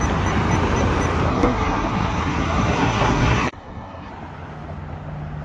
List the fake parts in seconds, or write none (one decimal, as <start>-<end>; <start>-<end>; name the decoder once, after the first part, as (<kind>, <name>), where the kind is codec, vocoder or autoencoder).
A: 1.3-4.1 (codec, SNAC)